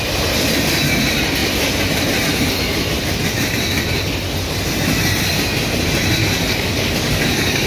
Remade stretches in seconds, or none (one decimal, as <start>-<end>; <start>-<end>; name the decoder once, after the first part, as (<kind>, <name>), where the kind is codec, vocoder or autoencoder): 6.2-7.7 (codec, DAC)